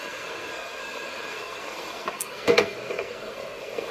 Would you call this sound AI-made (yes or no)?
yes